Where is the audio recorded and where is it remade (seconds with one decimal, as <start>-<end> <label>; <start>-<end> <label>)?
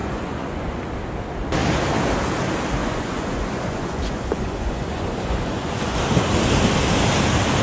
0.0-0.8 remade; 0.8-2.8 recorded; 2.8-6.0 remade; 6.0-7.6 recorded